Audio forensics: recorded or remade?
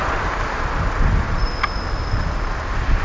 recorded